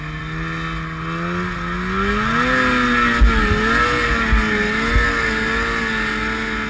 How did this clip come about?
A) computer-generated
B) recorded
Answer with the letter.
B